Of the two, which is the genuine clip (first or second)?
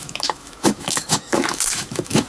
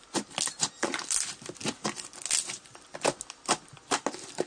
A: second